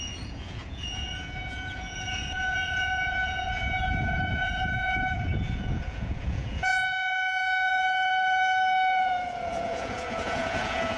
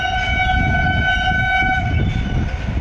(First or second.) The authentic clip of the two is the second